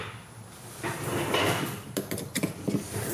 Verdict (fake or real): real